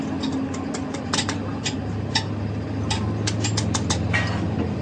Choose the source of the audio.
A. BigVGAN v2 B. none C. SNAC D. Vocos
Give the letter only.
B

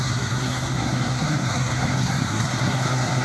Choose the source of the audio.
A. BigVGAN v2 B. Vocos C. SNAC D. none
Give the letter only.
C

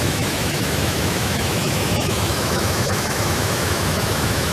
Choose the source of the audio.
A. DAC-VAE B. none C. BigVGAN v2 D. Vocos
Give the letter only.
A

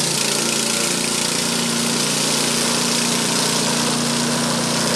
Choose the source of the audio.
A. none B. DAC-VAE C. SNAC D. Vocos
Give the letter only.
A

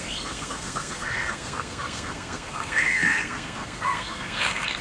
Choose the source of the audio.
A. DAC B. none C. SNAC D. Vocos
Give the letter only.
C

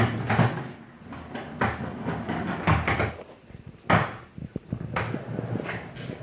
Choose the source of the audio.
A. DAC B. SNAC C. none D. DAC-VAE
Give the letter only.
C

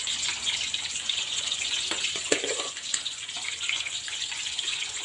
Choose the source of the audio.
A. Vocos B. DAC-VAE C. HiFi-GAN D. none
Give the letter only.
A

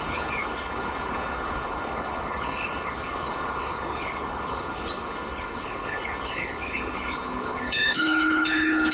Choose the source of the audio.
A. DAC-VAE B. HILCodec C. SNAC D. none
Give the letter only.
B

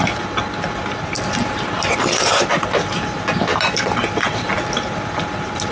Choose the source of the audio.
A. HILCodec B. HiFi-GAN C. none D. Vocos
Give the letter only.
C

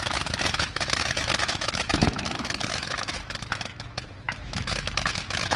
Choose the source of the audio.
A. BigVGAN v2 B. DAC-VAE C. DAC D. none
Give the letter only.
B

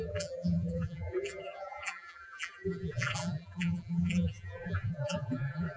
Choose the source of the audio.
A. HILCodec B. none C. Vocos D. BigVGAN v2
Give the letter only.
D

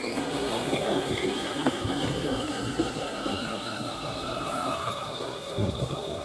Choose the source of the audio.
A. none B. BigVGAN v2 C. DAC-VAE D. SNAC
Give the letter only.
D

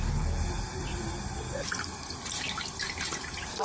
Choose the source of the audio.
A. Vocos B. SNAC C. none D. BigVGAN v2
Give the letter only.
C